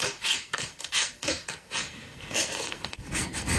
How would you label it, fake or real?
fake